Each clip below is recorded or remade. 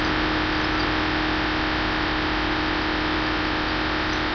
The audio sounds recorded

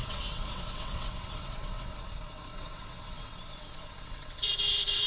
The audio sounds remade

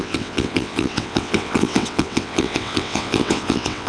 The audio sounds remade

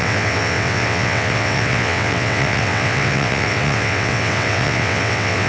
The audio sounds remade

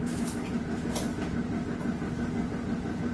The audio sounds recorded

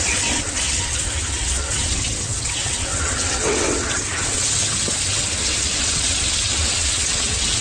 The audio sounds remade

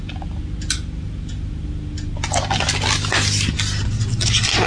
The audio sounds recorded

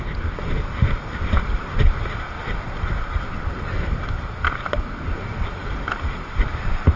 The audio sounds recorded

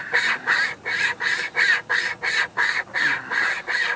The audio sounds recorded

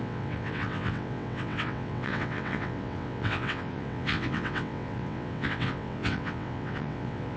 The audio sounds remade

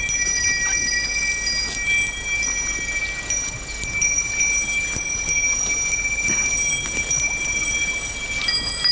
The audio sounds recorded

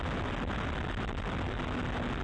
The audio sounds recorded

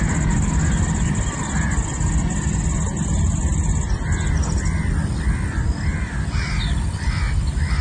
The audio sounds recorded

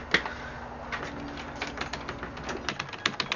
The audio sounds recorded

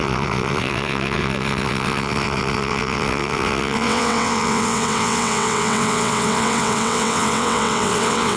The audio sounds remade